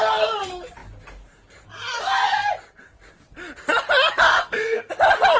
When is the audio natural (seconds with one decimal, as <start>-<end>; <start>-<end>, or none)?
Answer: 0.0-4.3; 4.9-5.4